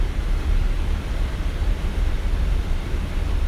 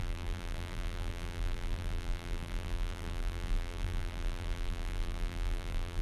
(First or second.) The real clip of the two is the first